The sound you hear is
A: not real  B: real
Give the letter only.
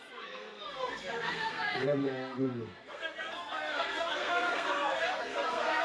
A